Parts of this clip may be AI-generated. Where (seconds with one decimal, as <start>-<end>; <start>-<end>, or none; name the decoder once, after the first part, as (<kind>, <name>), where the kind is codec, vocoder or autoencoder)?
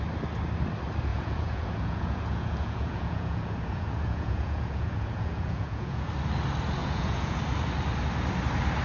1.1-6.1 (vocoder, Vocos); 6.8-7.4